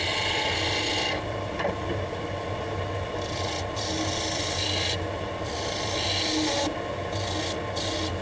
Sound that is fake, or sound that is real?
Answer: real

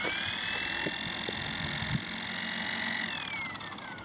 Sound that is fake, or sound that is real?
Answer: real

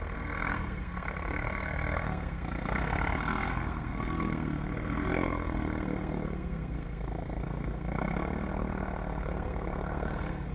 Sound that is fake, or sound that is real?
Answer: fake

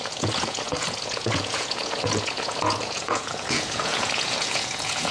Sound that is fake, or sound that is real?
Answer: fake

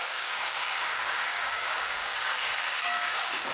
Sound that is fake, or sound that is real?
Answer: fake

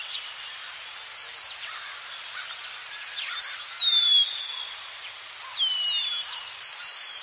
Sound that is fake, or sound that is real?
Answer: real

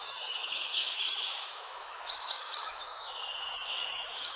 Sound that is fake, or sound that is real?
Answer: fake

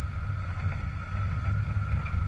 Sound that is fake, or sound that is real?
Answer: real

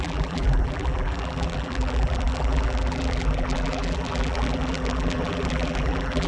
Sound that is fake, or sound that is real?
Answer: fake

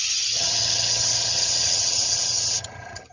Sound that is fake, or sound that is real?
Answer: fake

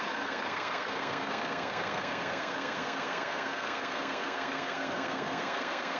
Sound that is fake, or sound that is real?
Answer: fake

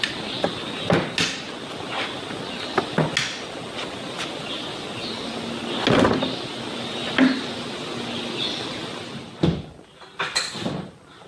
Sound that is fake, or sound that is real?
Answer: real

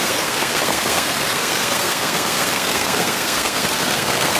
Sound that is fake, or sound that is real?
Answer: fake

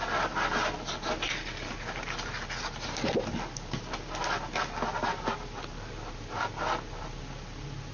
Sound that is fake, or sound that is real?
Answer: real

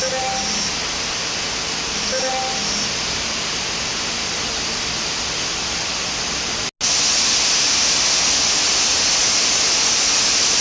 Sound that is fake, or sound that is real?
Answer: real